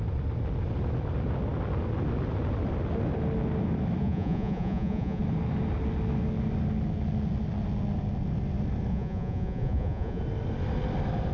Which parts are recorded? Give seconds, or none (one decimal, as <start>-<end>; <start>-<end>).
0.0-4.0; 5.2-8.9; 10.2-11.3

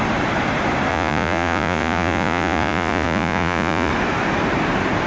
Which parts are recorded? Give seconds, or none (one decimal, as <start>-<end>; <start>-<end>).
0.0-0.9; 3.9-5.1

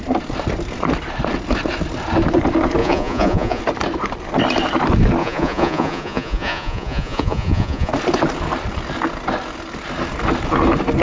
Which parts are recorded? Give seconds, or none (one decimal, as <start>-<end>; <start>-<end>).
0.0-2.8; 3.6-5.2; 7.9-11.0

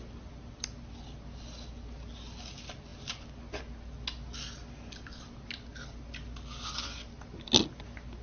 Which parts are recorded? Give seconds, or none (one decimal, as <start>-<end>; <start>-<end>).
0.0-8.2